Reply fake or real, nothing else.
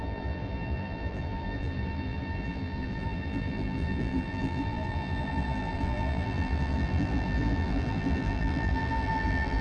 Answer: fake